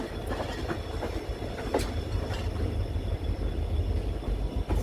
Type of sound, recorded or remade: recorded